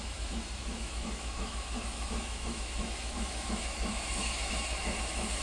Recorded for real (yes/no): no